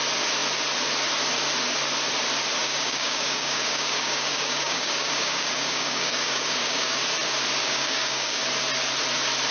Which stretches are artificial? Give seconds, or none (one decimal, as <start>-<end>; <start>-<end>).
2.6-7.0; 7.6-8.4